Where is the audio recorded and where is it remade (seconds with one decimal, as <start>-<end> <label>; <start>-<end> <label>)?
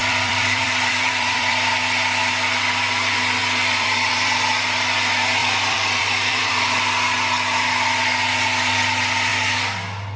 0.0-1.7 remade; 1.7-3.4 recorded; 3.4-4.1 remade; 4.1-5.4 recorded; 5.4-6.5 remade; 6.5-10.2 recorded